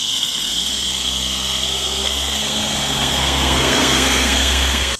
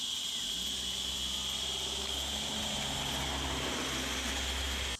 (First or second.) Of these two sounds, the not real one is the first